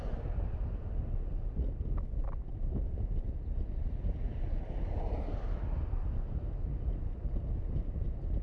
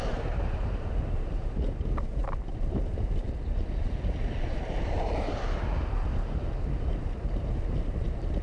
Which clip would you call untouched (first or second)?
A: first